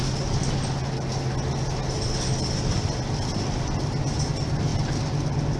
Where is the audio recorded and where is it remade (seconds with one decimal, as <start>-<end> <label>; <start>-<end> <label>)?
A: 0.0-5.6 recorded